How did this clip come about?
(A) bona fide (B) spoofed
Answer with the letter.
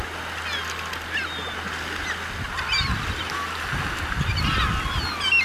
A